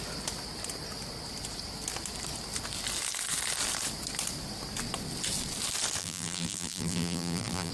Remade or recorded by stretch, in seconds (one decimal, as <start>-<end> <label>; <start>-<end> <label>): 0.0-6.0 recorded; 6.0-7.7 remade